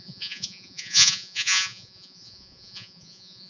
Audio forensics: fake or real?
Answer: fake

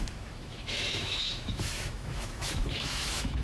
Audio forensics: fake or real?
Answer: fake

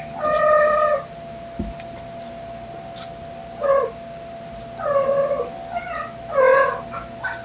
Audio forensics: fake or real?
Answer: real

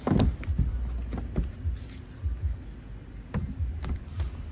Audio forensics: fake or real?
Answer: real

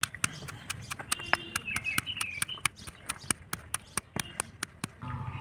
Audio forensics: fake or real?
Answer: real